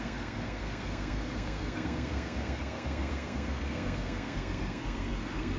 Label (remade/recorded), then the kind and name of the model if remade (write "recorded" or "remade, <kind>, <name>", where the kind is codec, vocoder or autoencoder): remade, codec, SNAC